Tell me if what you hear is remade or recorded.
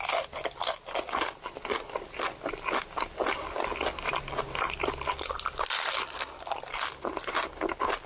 recorded